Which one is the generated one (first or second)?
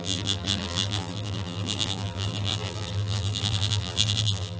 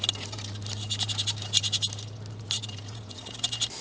first